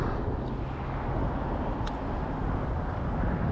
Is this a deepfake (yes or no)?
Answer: no